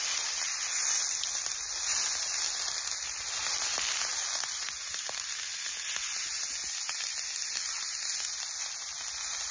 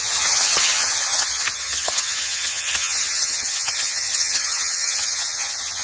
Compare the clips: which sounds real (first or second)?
first